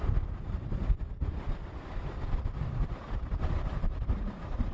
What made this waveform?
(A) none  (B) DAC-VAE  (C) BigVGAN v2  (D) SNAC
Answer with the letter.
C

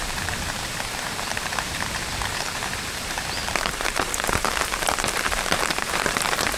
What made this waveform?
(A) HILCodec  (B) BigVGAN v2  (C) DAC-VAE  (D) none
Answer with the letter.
B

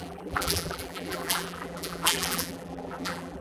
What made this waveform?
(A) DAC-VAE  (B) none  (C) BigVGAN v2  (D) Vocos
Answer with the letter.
C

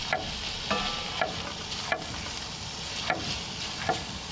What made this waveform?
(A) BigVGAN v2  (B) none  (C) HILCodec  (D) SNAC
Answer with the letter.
B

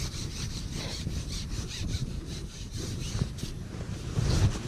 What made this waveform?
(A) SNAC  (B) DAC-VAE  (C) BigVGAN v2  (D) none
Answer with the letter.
C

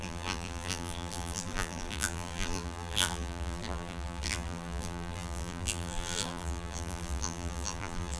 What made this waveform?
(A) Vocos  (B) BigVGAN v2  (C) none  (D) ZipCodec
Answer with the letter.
B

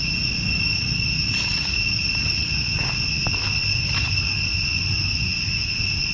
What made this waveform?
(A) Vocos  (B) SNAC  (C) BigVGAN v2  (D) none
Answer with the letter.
D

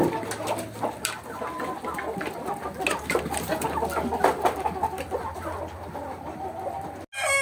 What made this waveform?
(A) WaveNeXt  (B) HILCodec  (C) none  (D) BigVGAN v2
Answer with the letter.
C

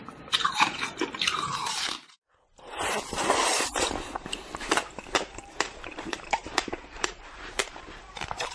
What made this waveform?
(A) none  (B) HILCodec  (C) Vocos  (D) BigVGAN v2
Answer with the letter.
D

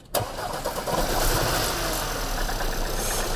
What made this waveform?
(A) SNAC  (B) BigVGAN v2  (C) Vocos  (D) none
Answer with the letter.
D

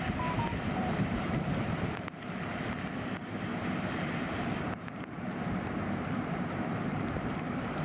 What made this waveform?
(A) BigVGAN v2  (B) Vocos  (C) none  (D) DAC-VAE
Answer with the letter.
A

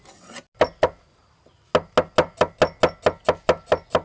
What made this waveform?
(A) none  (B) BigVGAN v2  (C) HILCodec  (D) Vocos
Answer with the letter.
A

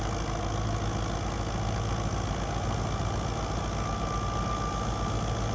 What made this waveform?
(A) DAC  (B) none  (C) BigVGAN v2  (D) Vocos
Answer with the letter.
B